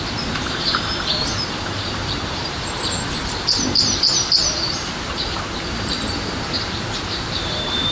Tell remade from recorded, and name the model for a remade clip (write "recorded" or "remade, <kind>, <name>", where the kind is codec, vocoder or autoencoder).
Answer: remade, vocoder, BigVGAN v2